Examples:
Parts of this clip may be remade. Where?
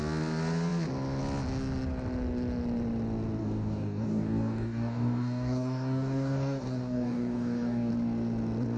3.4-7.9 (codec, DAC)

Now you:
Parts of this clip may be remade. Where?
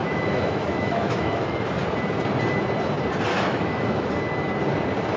0.0-1.7 (autoencoder, DAC-VAE); 3.3-4.1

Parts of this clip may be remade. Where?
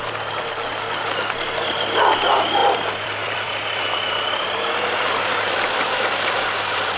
2.6-7.0 (vocoder, BigVGAN v2)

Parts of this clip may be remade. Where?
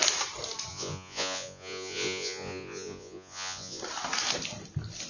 0.7-3.8 (vocoder, Vocos)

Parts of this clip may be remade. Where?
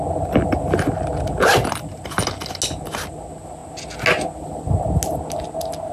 none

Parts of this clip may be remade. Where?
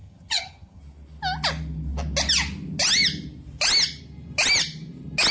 0.0-0.8 (vocoder, HiFi-GAN)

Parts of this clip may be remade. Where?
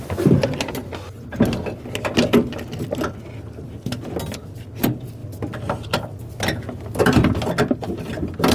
none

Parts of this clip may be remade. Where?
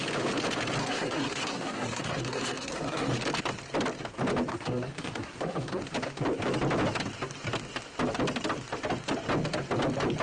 0.8-3.1 (codec, SNAC); 4.5-5.8